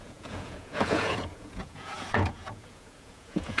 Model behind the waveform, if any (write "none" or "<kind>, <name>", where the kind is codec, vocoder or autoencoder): vocoder, Vocos